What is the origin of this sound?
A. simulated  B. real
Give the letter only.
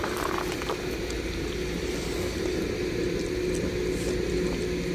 B